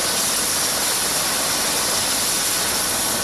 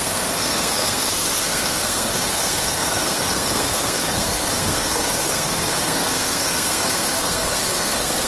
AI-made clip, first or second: second